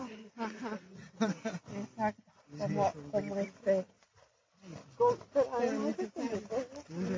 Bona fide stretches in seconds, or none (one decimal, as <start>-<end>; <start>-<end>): 1.5-7.2